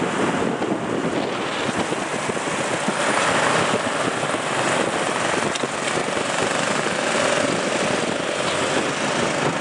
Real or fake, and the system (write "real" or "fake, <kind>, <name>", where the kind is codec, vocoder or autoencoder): real